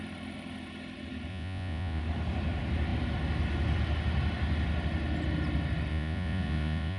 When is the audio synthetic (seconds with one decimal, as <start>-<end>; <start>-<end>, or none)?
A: 1.3-2.0; 5.9-7.0